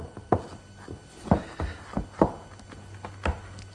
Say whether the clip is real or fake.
real